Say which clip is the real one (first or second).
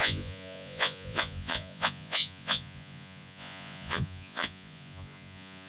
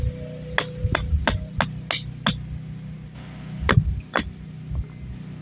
second